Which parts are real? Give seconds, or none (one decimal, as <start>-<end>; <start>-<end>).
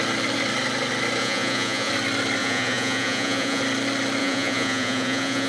0.0-1.2; 1.9-2.4; 3.6-4.2